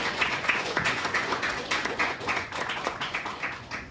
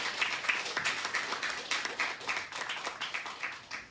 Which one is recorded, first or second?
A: second